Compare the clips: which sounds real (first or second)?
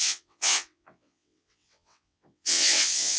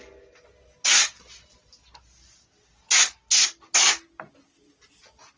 second